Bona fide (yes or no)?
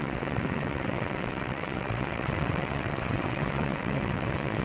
no